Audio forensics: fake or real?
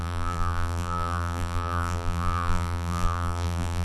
fake